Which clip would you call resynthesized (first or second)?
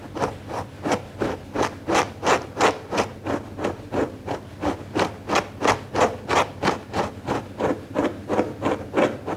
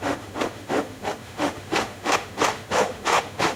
second